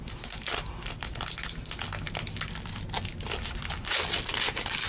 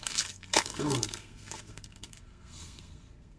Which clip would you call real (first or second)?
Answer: first